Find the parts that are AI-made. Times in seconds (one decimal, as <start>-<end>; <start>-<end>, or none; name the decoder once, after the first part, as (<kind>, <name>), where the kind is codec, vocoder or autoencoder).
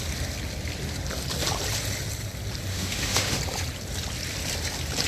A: 2.7-3.4 (autoencoder, DAC-VAE)